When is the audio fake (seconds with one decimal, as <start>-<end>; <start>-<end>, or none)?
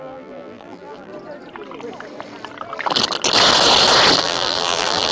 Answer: 0.0-1.1; 4.2-5.1